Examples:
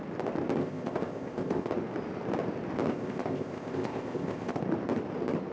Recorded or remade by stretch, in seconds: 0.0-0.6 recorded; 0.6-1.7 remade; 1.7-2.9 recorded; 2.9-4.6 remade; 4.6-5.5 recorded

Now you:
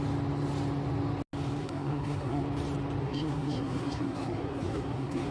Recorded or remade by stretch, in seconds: 0.0-1.6 recorded; 1.6-2.4 remade; 2.4-3.0 recorded; 3.0-5.3 remade

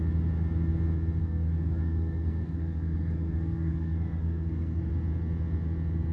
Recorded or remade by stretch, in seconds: 0.0-1.2 recorded; 1.2-4.9 remade; 4.9-6.1 recorded